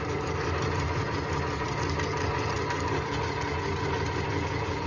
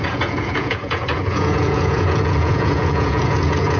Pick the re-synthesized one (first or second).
second